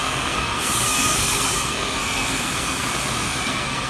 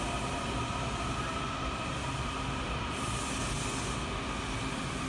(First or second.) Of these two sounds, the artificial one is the first